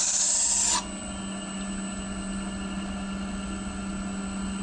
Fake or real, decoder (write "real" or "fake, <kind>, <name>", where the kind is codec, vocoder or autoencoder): real